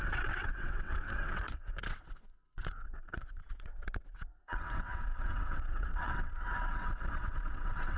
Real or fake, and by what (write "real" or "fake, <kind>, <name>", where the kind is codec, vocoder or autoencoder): fake, vocoder, WaveNeXt